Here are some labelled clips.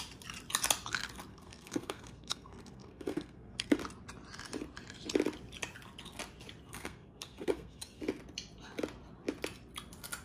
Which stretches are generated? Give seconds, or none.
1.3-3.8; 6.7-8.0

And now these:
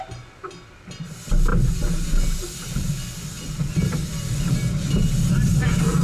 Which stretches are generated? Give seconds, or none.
none

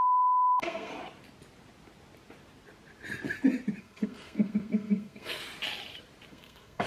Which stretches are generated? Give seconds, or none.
0.0-0.9; 3.8-5.4; 6.3-6.9

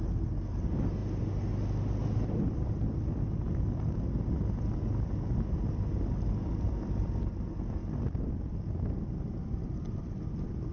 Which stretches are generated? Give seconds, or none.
none

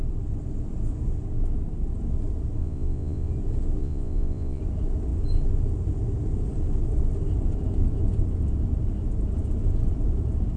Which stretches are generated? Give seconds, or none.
2.6-3.3; 3.8-4.6